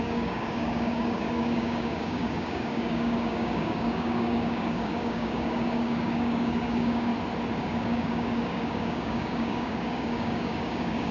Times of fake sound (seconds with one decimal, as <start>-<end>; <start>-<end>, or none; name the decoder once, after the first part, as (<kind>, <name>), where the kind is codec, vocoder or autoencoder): 0.0-7.1 (codec, DAC); 7.6-11.1